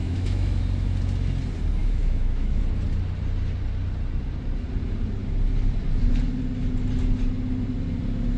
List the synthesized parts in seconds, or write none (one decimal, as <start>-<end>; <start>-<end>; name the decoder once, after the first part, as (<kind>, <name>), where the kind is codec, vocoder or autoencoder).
0.0-0.6 (autoencoder, DAC-VAE); 1.8-2.6